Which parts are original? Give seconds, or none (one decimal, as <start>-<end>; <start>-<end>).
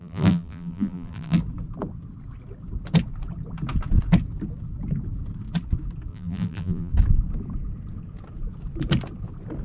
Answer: 1.4-6.1; 6.9-9.6